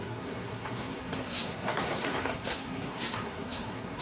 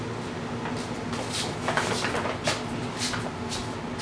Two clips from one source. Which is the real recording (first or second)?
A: second